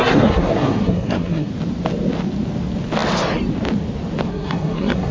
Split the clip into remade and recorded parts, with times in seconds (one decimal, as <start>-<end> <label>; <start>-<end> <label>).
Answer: 0.0-1.5 remade; 1.5-4.3 recorded; 4.3-5.1 remade